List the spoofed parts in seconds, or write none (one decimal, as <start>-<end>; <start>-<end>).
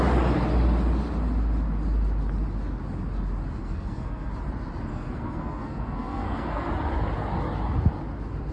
3.6-4.3; 4.9-6.7